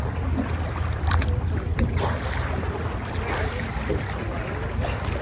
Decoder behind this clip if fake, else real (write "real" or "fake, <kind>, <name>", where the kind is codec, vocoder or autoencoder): real